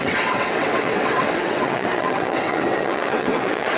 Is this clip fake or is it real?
fake